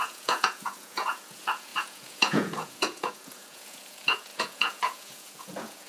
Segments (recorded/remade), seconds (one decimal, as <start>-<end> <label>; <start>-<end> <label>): 0.0-5.9 remade